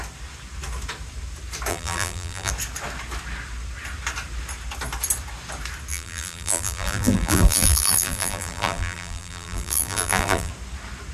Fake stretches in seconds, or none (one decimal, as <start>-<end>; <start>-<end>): 1.7-2.5; 5.9-10.5